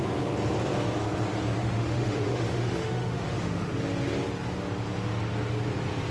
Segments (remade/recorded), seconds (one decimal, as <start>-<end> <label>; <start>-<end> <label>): 0.0-1.6 recorded; 1.6-3.7 remade; 3.7-6.1 recorded